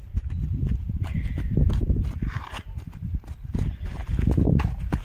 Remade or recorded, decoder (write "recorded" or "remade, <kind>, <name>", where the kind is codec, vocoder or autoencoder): remade, vocoder, BigVGAN v2